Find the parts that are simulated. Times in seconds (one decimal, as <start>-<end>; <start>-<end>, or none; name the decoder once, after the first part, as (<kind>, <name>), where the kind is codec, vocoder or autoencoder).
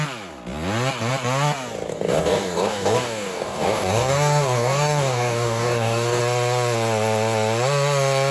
1.9-6.2 (codec, DAC)